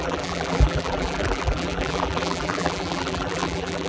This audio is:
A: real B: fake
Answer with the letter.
B